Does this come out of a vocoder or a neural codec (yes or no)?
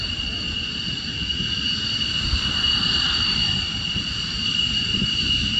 no